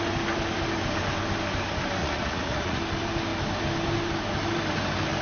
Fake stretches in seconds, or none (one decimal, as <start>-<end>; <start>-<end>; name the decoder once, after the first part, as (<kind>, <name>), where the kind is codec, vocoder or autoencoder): 2.0-2.8 (vocoder, Vocos)